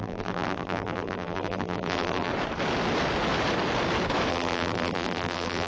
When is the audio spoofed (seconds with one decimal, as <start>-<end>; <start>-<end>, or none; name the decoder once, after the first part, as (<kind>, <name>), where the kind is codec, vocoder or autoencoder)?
0.0-2.3 (vocoder, BigVGAN v2); 4.3-5.7